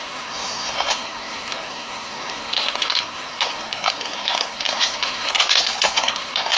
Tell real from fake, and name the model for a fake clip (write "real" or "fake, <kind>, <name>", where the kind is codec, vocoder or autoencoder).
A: fake, codec, SNAC